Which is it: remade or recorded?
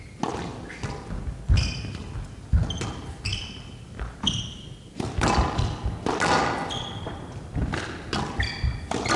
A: recorded